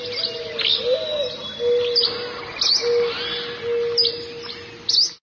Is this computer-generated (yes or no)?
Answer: no